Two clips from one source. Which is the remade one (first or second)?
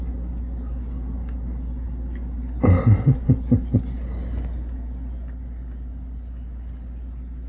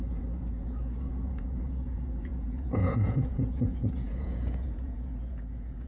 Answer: second